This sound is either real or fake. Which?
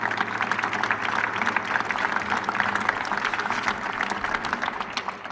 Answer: real